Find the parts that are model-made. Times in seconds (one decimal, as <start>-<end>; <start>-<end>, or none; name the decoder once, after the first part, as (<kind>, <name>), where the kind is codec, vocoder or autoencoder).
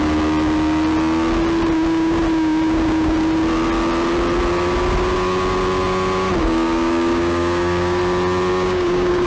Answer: 6.4-8.0 (codec, DAC); 8.5-9.3